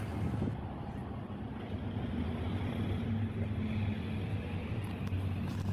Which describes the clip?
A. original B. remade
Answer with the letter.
A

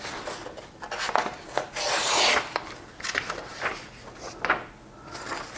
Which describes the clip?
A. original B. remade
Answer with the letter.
A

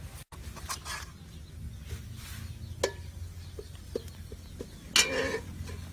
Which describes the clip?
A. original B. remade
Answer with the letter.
A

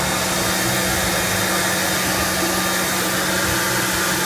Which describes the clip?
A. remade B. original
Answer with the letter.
B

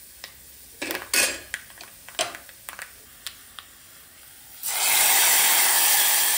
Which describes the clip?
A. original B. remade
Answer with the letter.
A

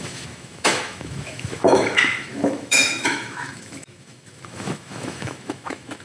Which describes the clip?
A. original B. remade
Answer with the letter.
B